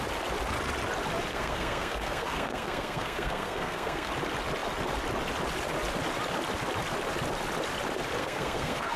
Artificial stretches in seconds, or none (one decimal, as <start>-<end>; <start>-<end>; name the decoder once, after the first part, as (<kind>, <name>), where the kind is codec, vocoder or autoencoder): 1.3-4.1 (codec, SNAC); 8.2-9.0